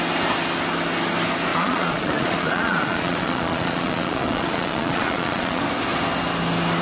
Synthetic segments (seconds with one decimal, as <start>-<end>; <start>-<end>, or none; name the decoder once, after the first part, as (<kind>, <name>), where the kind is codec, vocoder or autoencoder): 1.5-5.6 (vocoder, Vocos)